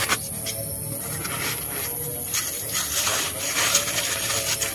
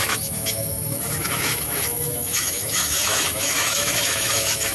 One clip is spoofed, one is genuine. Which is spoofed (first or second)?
second